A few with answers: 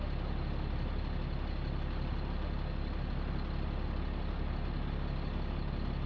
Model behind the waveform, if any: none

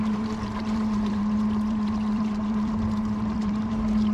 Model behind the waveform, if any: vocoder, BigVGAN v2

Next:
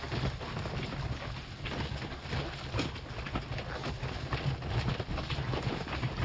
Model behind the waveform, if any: none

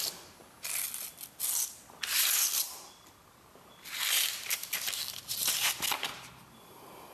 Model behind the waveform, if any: none